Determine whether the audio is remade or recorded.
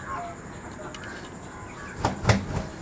recorded